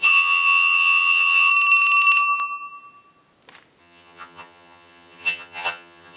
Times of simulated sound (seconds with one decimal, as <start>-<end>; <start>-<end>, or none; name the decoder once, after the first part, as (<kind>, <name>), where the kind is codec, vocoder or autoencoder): 0.0-1.5 (vocoder, HiFi-GAN); 3.8-6.2